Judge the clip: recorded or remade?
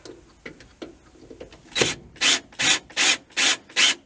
recorded